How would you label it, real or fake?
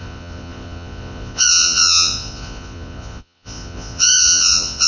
fake